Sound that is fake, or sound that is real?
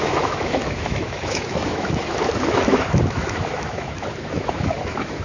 fake